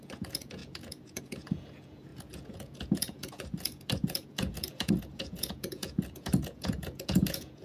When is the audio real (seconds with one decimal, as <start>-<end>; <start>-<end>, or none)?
none